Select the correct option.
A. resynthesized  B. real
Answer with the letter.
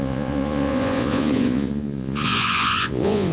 A